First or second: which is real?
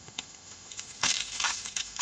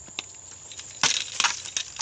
second